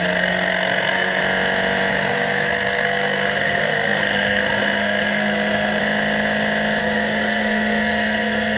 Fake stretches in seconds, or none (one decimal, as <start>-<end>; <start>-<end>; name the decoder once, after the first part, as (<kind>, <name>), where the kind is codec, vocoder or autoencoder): 0.0-1.2 (codec, SNAC); 1.9-5.8; 6.8-8.6